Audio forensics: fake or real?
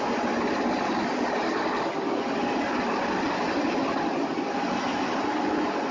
real